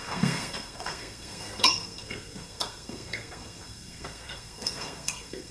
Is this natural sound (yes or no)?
no